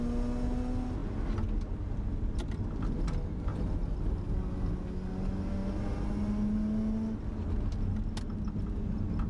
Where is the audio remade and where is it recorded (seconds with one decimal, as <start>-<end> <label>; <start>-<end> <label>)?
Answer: 0.0-9.3 recorded